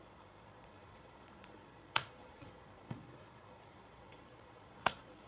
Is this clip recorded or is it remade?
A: remade